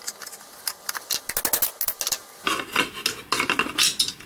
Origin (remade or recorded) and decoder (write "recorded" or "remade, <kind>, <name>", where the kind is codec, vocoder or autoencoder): recorded